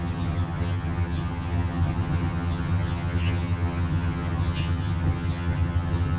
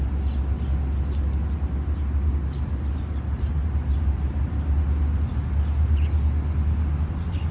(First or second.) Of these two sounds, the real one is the second